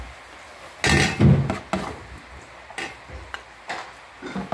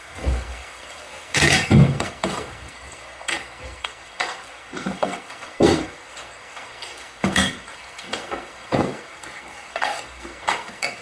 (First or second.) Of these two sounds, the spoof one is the second